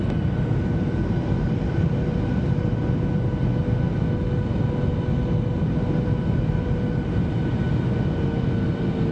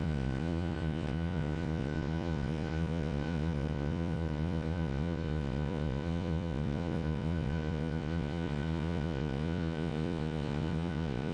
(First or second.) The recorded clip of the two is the first